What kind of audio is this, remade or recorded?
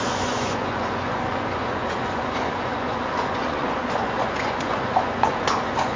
remade